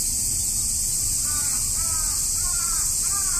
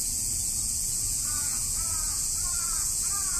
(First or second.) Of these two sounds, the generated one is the second